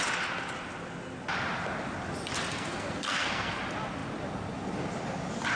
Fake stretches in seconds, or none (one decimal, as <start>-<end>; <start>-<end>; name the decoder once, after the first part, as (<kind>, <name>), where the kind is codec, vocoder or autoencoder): 2.5-3.6 (codec, SNAC)